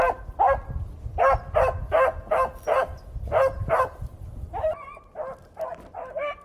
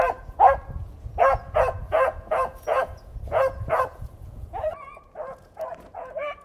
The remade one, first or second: second